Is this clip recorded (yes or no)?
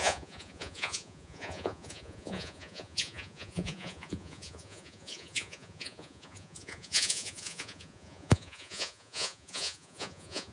no